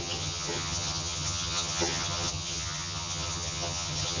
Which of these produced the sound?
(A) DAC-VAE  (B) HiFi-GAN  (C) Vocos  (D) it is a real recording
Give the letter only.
B